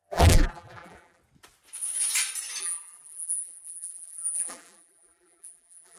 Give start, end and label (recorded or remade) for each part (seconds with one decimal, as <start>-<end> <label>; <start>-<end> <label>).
0.0-1.2 remade; 1.2-2.6 recorded; 2.6-6.0 remade